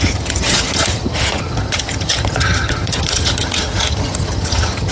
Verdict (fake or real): fake